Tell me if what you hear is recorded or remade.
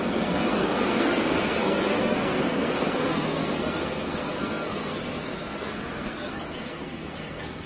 remade